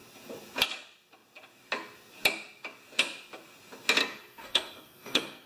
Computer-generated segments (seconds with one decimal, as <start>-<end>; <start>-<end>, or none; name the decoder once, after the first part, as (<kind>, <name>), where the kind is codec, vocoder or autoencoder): 4.0-5.5 (codec, SNAC)

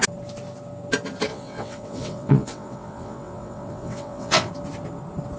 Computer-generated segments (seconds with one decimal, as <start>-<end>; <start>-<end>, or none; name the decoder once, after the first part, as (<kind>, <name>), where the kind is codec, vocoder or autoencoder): 1.3-4.5 (vocoder, WaveNeXt)

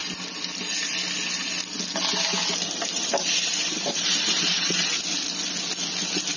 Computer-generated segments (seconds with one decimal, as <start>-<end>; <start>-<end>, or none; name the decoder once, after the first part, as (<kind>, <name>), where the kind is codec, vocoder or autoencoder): 2.4-4.1 (vocoder, BigVGAN v2); 4.5-5.0

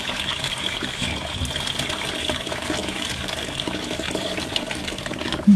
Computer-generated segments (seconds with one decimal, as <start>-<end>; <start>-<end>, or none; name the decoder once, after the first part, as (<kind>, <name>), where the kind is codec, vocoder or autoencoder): 0.0-1.1 (codec, DAC); 2.2-5.6

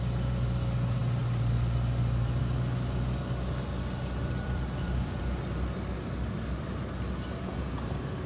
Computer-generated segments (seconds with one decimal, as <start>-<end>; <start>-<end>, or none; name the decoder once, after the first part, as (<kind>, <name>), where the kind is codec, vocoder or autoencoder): 4.2-5.2 (vocoder, BigVGAN v2)